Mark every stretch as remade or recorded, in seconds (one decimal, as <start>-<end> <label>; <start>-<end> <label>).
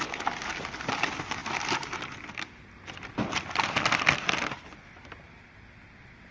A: 0.0-6.3 recorded